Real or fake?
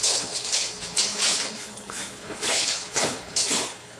fake